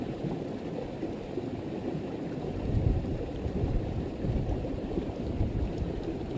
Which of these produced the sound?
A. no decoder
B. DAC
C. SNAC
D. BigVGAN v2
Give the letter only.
D